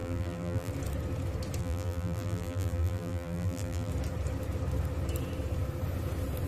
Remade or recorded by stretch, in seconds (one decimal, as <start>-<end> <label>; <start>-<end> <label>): 0.0-0.7 remade; 0.7-1.6 recorded; 1.6-3.9 remade; 3.9-6.5 recorded